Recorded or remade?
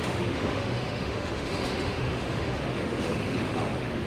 remade